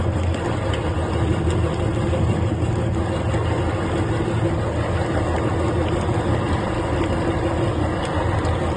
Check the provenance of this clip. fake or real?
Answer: real